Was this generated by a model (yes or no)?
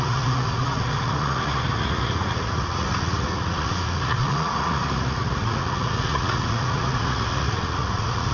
yes